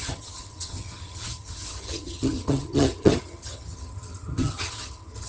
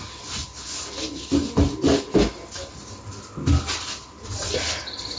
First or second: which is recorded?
second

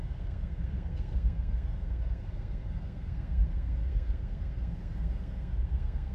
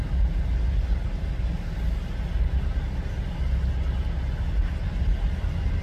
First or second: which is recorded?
second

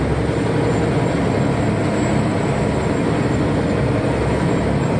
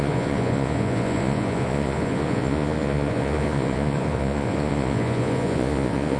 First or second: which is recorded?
first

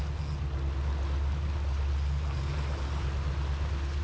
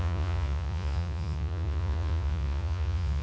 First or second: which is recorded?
first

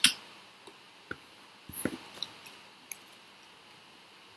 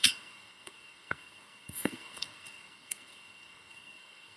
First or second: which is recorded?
first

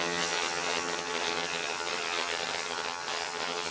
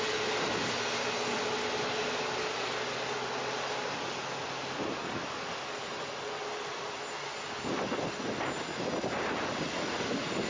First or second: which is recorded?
second